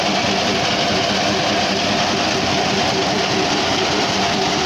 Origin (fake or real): real